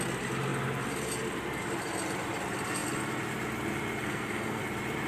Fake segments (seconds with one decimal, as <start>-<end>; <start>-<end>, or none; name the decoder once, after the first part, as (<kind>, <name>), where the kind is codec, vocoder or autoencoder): 4.0-4.6 (codec, SNAC)